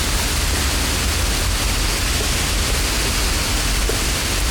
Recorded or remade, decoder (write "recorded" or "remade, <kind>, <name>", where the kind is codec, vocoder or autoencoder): recorded